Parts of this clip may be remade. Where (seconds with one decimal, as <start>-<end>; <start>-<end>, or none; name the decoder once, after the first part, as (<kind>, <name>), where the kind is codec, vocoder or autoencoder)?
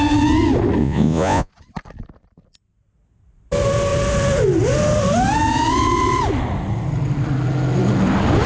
0.8-1.5 (vocoder, Vocos)